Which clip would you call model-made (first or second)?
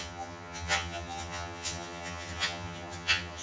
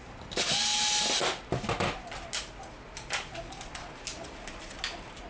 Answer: first